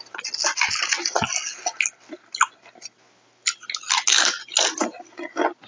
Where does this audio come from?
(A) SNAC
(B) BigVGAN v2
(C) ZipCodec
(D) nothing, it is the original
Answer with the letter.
D